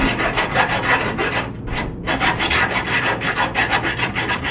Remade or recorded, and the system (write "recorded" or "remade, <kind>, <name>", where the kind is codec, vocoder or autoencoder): remade, vocoder, BigVGAN v2